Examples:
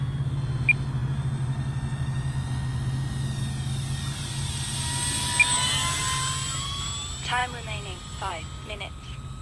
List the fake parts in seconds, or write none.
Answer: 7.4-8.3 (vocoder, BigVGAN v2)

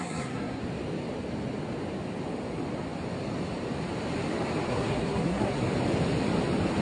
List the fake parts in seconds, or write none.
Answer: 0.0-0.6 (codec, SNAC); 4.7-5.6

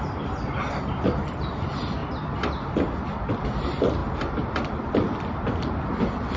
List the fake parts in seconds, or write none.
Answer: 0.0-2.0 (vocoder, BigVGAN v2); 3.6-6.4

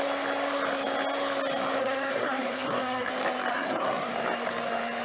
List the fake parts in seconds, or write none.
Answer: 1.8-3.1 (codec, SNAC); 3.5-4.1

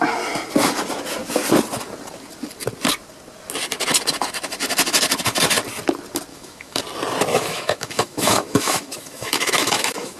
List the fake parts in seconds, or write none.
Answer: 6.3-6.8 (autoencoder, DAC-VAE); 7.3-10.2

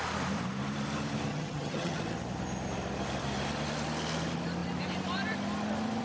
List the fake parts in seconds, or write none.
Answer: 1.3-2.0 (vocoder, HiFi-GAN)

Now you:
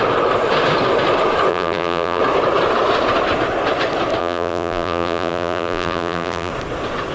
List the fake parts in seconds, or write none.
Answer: 1.5-2.2 (vocoder, BigVGAN v2); 4.2-6.5